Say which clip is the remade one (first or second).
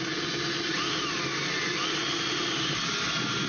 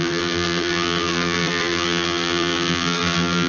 second